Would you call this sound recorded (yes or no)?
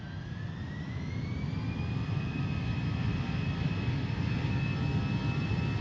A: yes